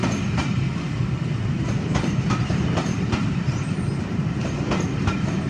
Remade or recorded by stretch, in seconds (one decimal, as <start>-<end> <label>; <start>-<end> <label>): 0.0-1.4 recorded; 1.4-4.7 remade; 4.7-5.5 recorded